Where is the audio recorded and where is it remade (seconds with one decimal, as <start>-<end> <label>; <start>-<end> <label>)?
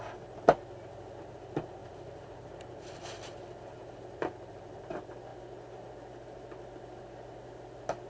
0.0-1.8 recorded; 1.8-2.9 remade; 2.9-3.8 recorded; 3.8-4.3 remade; 4.3-8.1 recorded